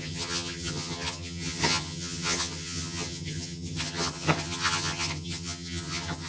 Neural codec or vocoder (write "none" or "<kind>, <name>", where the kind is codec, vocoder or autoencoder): vocoder, HiFi-GAN